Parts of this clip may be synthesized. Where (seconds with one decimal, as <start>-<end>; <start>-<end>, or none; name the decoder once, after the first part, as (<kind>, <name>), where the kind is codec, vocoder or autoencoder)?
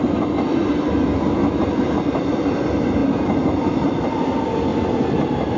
none